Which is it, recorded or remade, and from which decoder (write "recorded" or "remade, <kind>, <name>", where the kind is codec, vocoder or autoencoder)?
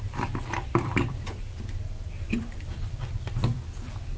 remade, vocoder, BigVGAN v2